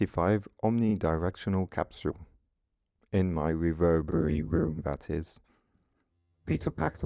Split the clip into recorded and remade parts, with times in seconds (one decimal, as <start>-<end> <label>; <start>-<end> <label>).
0.0-4.1 recorded; 4.1-4.8 remade; 4.8-6.1 recorded; 6.1-7.1 remade

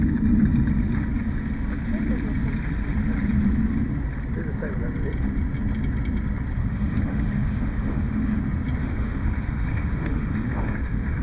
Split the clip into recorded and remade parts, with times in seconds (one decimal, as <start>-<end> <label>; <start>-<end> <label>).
0.0-6.6 recorded; 6.6-8.4 remade; 8.4-8.8 recorded; 8.8-11.2 remade